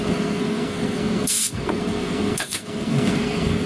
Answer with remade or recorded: remade